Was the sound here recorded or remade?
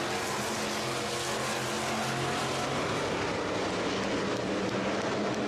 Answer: recorded